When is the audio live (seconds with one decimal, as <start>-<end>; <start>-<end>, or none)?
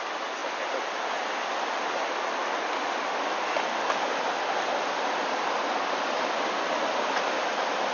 0.0-7.9